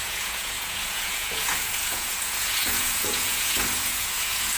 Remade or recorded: remade